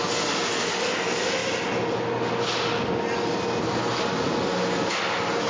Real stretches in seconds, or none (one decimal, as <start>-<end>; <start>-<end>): 0.0-5.5